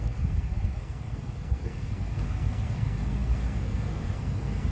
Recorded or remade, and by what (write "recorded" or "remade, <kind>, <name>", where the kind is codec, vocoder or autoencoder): remade, codec, SNAC